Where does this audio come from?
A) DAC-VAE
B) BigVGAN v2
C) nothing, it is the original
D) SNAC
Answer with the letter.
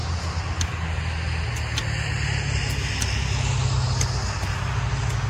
C